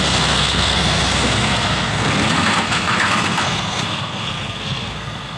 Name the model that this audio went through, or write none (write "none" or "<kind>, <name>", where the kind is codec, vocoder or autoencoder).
codec, SNAC